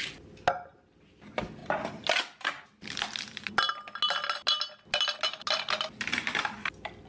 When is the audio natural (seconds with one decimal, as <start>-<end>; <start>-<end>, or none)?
0.0-7.1